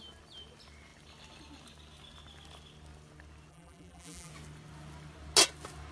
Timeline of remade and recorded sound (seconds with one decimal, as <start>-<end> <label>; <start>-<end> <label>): 0.0-3.5 recorded; 3.5-4.3 remade; 4.3-5.9 recorded